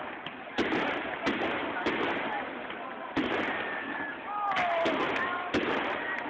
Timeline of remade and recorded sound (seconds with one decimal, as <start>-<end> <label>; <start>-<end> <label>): 0.0-6.3 recorded